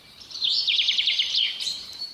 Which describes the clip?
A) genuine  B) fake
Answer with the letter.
B